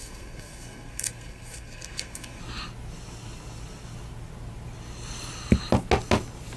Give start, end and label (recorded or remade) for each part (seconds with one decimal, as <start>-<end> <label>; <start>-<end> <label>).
0.0-2.4 remade; 2.4-6.6 recorded